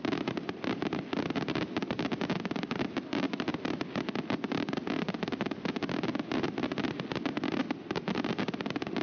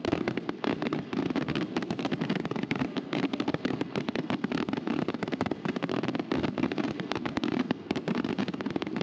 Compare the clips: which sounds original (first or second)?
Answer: first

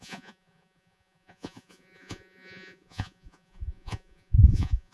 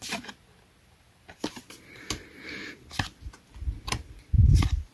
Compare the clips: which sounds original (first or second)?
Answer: second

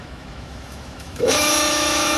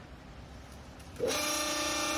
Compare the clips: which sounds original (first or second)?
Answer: second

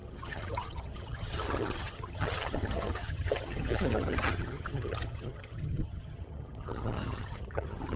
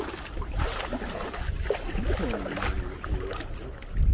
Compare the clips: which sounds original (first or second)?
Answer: second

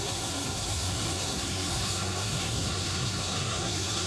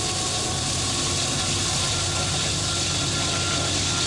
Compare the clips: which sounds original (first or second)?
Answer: second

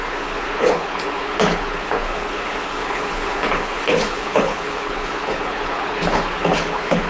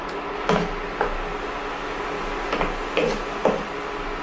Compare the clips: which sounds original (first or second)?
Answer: second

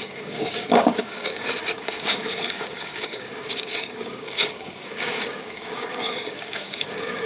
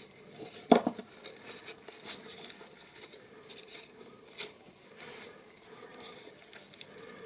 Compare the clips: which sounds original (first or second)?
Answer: second